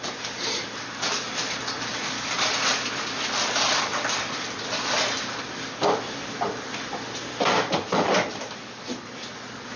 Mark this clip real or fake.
fake